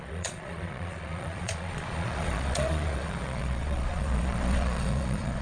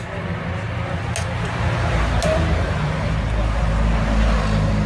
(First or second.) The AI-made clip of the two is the first